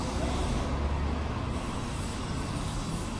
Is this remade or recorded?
remade